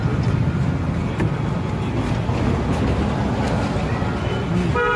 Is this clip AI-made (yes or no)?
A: no